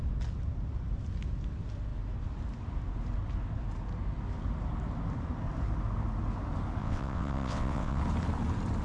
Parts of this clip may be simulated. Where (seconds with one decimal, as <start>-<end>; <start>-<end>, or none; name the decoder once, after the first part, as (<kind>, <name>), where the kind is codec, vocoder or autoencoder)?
6.8-8.0 (vocoder, WaveNeXt)